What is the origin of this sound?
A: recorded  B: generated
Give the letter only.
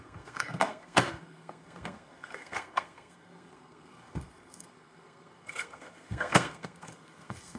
B